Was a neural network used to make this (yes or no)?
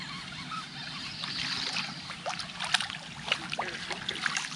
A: no